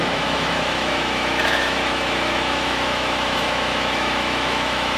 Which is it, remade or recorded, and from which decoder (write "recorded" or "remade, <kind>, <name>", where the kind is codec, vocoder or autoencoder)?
remade, autoencoder, DAC-VAE